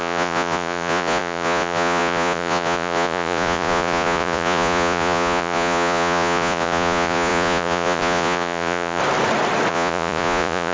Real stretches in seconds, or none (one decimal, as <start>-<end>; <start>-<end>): 9.0-9.7